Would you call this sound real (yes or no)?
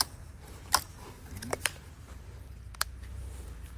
no